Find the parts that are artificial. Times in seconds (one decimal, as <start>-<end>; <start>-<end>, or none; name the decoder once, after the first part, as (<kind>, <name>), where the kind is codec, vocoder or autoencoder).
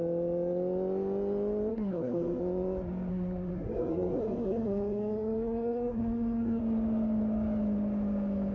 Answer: 1.7-2.4 (codec, SNAC); 3.1-6.6